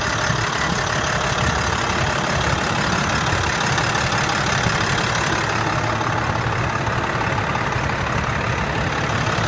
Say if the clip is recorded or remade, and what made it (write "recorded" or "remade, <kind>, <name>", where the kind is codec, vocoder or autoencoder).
recorded